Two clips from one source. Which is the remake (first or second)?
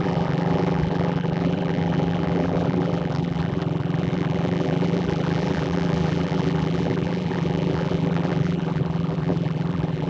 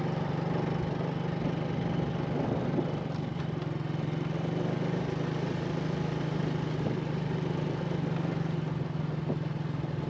first